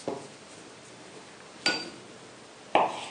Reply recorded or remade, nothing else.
recorded